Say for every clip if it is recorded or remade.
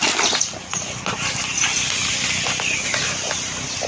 recorded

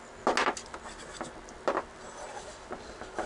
recorded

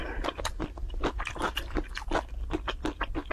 recorded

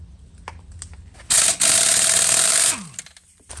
recorded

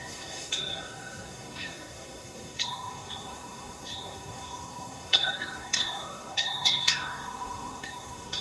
remade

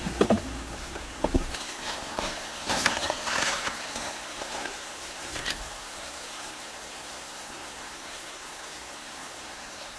remade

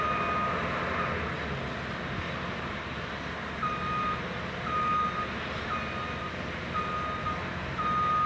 recorded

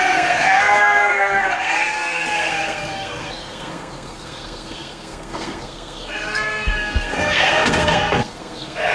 remade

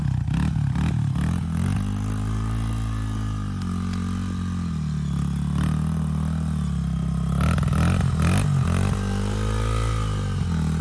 recorded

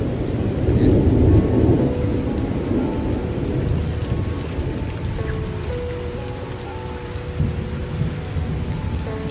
recorded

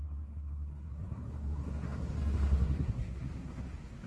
remade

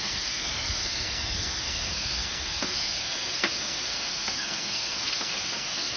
remade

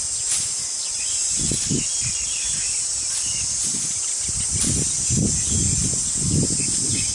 recorded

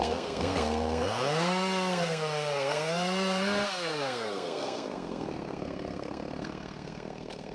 remade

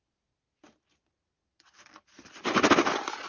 recorded